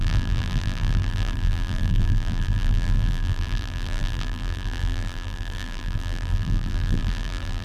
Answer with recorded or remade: remade